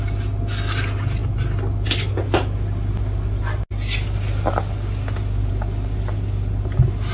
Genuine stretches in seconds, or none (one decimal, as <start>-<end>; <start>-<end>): 0.0-7.1